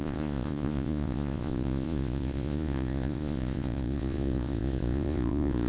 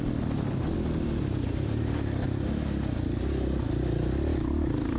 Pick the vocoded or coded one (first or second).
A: first